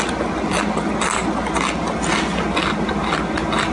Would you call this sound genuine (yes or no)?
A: yes